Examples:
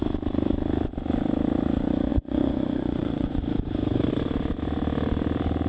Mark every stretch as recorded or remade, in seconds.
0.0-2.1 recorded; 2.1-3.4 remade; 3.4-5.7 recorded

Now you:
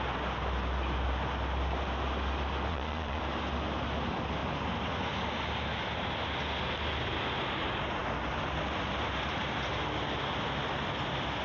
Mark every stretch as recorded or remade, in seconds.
0.0-2.7 recorded; 2.7-3.2 remade; 3.2-11.4 recorded

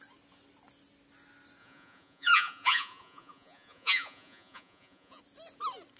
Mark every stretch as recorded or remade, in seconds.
0.0-1.6 recorded; 1.6-5.2 remade; 5.2-6.0 recorded

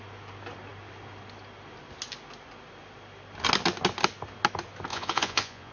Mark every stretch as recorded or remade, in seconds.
0.0-4.9 recorded; 4.9-5.7 remade

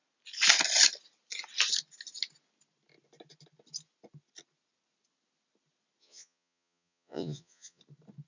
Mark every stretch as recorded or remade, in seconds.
0.0-6.0 recorded; 6.0-7.8 remade; 7.8-8.3 recorded

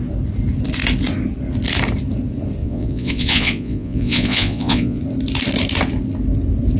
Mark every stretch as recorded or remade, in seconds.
0.0-2.6 recorded; 2.6-5.0 remade; 5.0-6.8 recorded

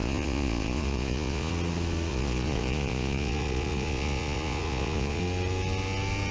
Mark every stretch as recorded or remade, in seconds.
0.0-1.5 remade; 1.5-2.1 recorded; 2.1-5.2 remade; 5.2-6.3 recorded

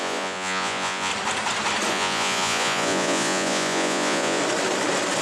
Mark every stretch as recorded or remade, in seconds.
0.0-1.1 remade; 1.1-1.9 recorded; 1.9-4.4 remade; 4.4-5.2 recorded